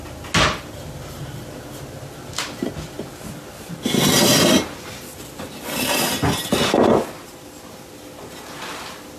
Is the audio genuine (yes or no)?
yes